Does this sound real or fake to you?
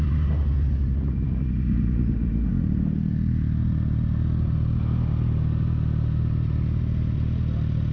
real